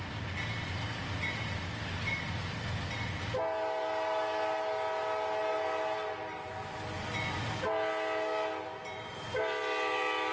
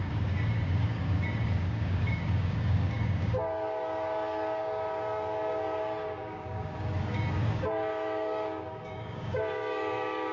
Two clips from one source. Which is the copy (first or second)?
second